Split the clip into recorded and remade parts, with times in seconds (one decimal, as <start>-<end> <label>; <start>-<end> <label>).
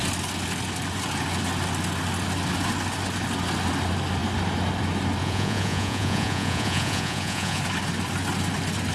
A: 0.0-5.2 recorded; 5.2-7.6 remade; 7.6-8.9 recorded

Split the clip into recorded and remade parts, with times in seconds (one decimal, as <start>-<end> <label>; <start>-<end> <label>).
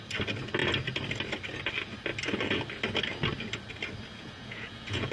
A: 0.0-4.1 recorded; 4.1-5.1 remade